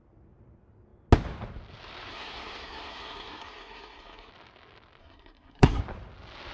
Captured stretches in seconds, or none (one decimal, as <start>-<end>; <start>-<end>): 0.0-2.1; 4.3-5.0; 5.8-6.5

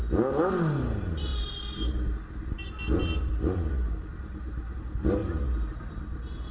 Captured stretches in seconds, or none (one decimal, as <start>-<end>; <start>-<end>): 0.0-6.5

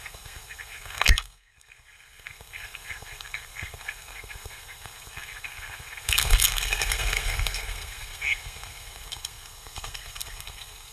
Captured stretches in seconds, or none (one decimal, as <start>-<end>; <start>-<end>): none